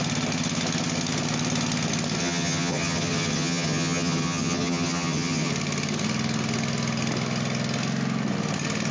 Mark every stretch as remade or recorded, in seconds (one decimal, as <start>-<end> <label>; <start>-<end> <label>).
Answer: 0.0-2.2 recorded; 2.2-5.5 remade; 5.5-8.9 recorded